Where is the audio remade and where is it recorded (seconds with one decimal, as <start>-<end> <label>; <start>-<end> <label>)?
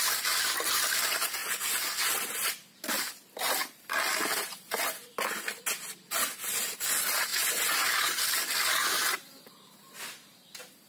0.0-10.9 recorded